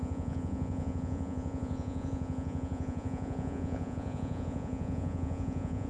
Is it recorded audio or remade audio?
remade